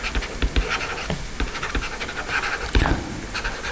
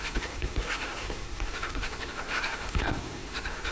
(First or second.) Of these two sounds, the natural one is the first